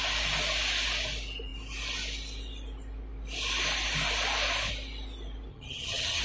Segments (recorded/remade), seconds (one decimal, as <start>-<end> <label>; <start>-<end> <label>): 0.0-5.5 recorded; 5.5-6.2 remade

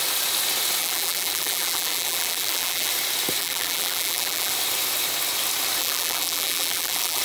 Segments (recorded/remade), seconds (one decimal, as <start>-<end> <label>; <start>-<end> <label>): 0.0-0.8 recorded; 0.8-2.9 remade; 2.9-3.4 recorded; 3.4-4.5 remade; 4.5-5.8 recorded; 5.8-7.2 remade

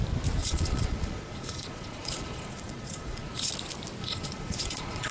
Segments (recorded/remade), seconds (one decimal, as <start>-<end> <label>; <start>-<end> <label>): 0.0-0.4 recorded; 0.4-3.5 remade; 3.5-4.0 recorded; 4.0-5.1 remade

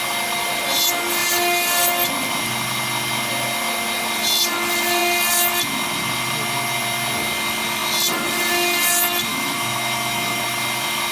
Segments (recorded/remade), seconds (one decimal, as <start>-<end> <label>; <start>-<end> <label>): 0.0-9.3 recorded; 9.3-10.4 remade; 10.4-11.1 recorded

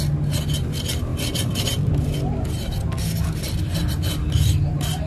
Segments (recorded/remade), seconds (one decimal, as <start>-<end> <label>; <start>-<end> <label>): 0.0-5.1 recorded

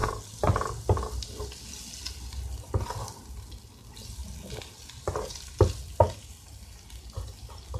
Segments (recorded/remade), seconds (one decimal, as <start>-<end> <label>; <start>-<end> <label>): 0.0-7.8 recorded